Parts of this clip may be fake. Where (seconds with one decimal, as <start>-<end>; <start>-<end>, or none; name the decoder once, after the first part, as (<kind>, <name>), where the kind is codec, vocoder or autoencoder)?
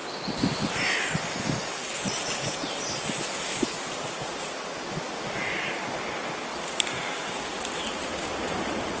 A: 6.5-7.4 (vocoder, BigVGAN v2)